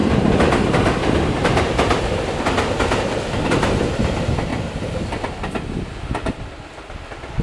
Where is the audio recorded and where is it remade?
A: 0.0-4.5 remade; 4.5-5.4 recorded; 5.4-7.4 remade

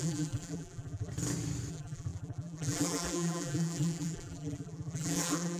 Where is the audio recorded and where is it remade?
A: 0.0-1.1 remade; 1.1-1.7 recorded; 1.7-5.6 remade

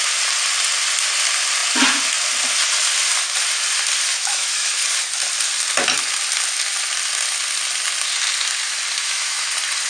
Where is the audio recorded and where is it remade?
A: 0.0-4.1 recorded; 4.1-4.8 remade; 4.8-9.0 recorded; 9.0-9.5 remade; 9.5-9.9 recorded

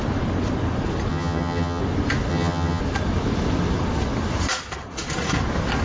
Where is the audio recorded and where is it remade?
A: 0.0-1.1 recorded; 1.1-1.8 remade; 1.8-2.3 recorded; 2.3-2.8 remade; 2.8-5.8 recorded

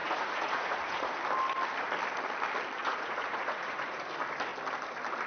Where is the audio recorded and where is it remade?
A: 0.0-1.1 remade; 1.1-2.8 recorded; 2.8-4.1 remade; 4.1-5.3 recorded